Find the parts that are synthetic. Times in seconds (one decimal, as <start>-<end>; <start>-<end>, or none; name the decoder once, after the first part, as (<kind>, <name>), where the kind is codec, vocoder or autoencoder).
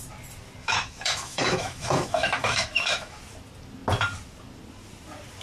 0.6-3.2 (autoencoder, DAC-VAE)